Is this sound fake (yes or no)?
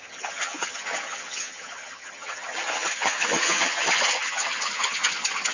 yes